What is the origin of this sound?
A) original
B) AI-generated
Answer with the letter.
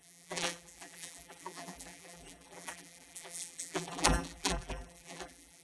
B